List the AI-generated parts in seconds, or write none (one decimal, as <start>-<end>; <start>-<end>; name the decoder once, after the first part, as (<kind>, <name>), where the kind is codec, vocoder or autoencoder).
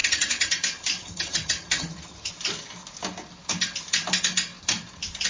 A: 0.0-0.5 (vocoder, HiFi-GAN); 1.0-2.3